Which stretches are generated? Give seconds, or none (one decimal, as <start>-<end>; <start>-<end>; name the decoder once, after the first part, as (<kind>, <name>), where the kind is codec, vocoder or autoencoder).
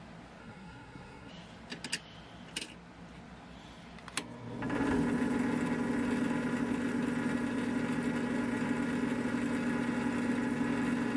0.4-1.3 (codec, SNAC)